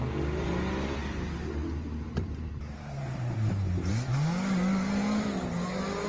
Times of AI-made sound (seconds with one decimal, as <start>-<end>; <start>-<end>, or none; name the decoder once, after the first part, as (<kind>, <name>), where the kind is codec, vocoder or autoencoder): 1.0-3.9 (vocoder, BigVGAN v2)